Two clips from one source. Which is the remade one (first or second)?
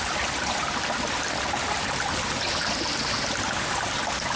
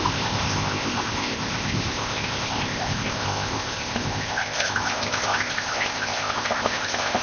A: second